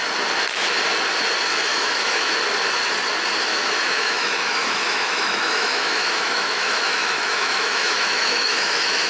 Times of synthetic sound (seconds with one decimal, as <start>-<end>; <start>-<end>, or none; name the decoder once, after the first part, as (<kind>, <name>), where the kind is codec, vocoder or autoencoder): 1.7-2.3 (autoencoder, DAC-VAE); 3.5-9.1